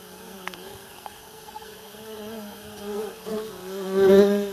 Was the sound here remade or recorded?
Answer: remade